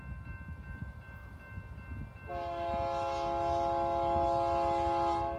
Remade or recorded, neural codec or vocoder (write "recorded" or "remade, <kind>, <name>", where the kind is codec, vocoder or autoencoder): recorded